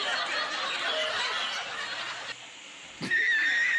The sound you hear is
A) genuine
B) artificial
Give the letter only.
A